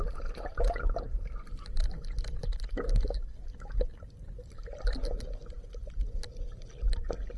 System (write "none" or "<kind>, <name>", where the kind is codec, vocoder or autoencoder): none